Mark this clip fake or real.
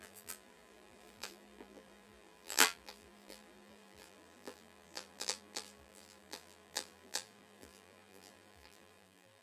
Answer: fake